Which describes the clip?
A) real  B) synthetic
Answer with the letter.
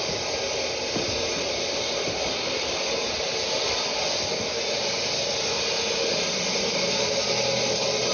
A